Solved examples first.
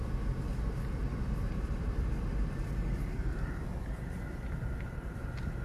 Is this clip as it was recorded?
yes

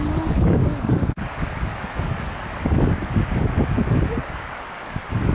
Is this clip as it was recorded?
no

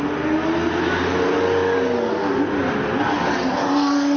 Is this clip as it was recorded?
yes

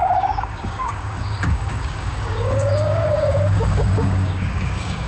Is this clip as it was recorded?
no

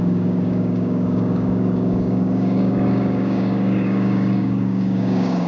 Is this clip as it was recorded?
no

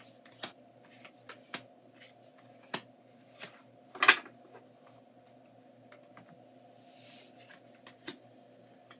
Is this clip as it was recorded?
yes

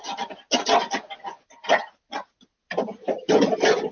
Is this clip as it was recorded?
yes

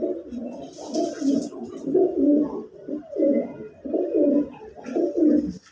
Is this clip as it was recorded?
yes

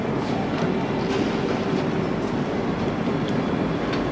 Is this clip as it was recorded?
yes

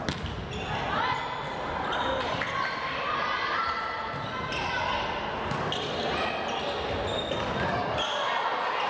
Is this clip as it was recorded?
yes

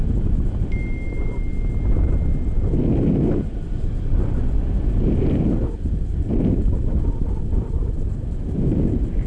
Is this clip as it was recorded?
yes